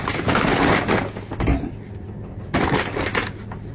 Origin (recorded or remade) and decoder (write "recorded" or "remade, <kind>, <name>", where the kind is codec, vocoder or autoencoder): recorded